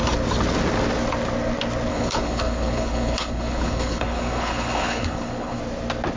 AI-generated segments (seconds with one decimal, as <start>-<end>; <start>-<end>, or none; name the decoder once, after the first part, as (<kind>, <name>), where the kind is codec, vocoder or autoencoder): 1.9-5.6 (codec, HILCodec)